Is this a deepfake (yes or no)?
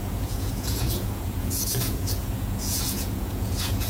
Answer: yes